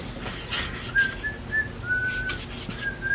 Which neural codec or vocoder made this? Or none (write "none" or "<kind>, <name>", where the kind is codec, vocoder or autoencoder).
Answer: none